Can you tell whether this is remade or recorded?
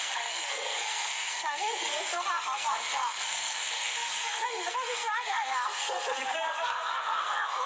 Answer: remade